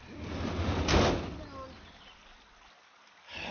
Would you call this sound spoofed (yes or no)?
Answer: no